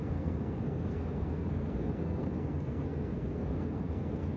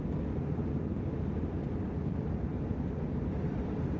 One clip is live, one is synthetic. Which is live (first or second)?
second